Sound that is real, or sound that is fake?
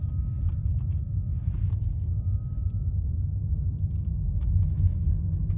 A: real